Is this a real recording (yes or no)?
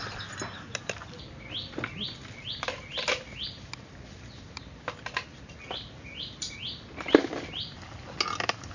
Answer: yes